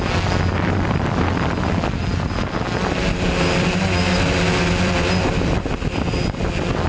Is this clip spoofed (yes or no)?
no